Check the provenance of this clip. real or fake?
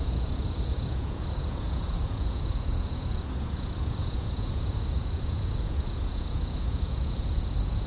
fake